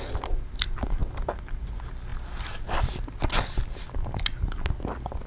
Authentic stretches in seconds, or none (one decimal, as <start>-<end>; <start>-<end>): 0.0-5.3